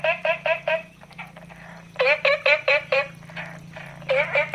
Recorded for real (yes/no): yes